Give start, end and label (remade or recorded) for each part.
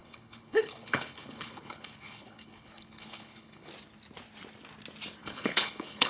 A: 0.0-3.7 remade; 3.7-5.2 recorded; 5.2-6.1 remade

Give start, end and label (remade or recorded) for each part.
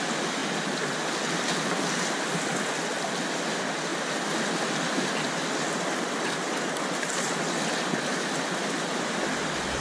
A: 0.0-9.8 recorded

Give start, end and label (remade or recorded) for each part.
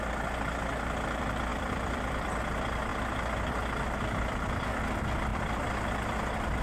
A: 0.0-1.5 recorded; 1.5-2.4 remade; 2.4-2.9 recorded; 2.9-3.5 remade; 3.5-5.3 recorded; 5.3-6.6 remade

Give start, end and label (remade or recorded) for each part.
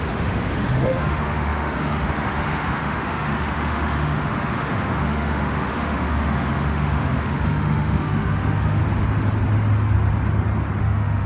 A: 0.0-8.8 remade; 8.8-10.8 recorded; 10.8-11.3 remade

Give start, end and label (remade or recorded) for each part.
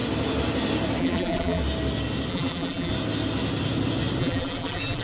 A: 0.0-1.0 recorded; 1.0-1.6 remade; 1.6-2.3 recorded; 2.3-2.9 remade; 2.9-4.2 recorded; 4.2-5.0 remade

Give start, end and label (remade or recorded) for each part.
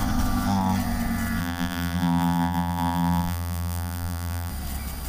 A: 0.0-1.4 recorded; 1.4-4.5 remade; 4.5-5.1 recorded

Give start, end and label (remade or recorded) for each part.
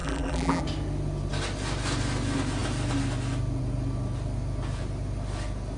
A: 0.0-0.6 remade; 0.6-5.8 recorded